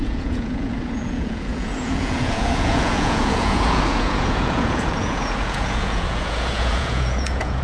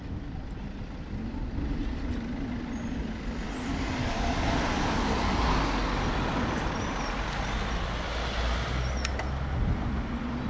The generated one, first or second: first